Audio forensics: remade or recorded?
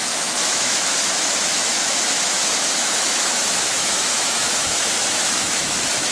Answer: remade